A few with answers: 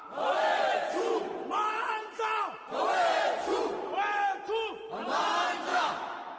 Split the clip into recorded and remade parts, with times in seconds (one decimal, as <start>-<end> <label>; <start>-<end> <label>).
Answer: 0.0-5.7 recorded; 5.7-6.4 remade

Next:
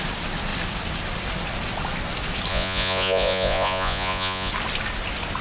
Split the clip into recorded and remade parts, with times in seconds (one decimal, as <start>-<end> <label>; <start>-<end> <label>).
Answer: 0.0-2.5 recorded; 2.5-4.5 remade; 4.5-5.4 recorded

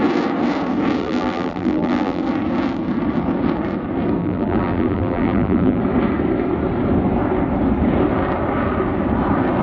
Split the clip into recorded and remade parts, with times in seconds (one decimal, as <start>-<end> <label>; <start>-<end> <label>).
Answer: 0.0-1.0 recorded; 1.0-2.2 remade; 2.2-4.2 recorded; 4.2-5.8 remade; 5.8-9.6 recorded

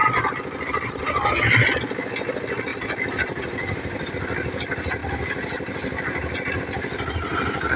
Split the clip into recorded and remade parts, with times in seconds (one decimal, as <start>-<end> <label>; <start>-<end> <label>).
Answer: 0.0-2.7 recorded; 2.7-4.1 remade; 4.1-7.8 recorded

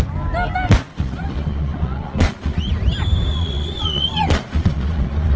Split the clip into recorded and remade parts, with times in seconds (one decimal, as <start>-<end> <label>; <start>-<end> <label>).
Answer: 0.0-0.9 recorded; 0.9-2.7 remade; 2.7-3.3 recorded; 3.3-5.4 remade

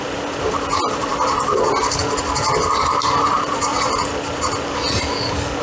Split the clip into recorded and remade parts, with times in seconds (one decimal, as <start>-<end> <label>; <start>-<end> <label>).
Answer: 0.0-3.7 remade; 3.7-4.9 recorded; 4.9-5.6 remade